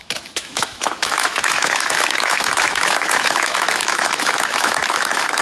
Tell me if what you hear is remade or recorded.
remade